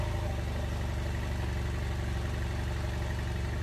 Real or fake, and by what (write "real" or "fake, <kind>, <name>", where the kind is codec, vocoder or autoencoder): real